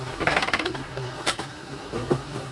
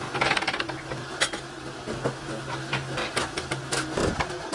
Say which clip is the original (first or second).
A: second